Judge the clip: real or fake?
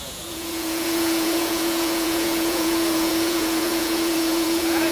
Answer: fake